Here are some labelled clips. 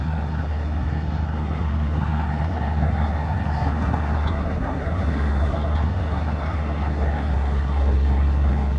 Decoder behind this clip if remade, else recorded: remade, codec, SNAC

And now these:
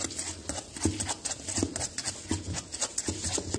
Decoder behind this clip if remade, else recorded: recorded